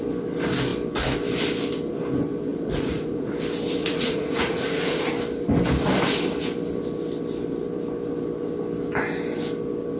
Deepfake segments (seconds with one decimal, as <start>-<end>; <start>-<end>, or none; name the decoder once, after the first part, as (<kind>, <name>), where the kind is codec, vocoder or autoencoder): 2.5-3.3 (vocoder, Vocos); 3.8-5.1